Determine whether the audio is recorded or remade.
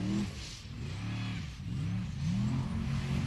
recorded